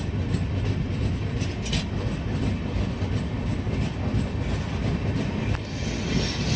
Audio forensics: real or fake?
real